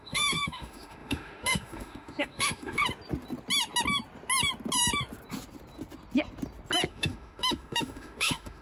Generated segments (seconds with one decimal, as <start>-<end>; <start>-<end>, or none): 0.0-2.8; 6.9-8.6